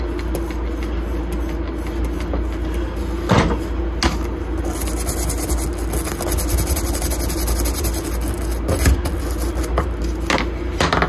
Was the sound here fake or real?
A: real